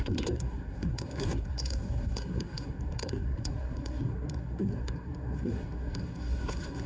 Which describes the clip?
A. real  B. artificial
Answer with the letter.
B